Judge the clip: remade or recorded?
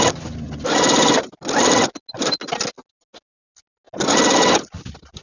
recorded